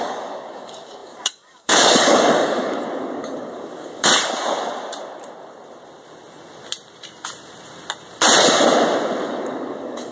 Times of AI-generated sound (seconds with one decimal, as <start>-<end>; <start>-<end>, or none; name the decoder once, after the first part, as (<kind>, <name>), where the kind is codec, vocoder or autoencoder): 0.0-4.1 (codec, DAC); 9.2-10.1